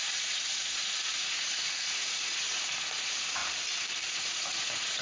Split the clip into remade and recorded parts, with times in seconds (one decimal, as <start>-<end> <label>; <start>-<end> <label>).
0.0-3.4 remade; 3.4-4.1 recorded; 4.1-5.0 remade